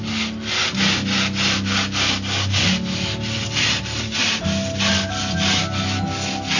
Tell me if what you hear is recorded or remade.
recorded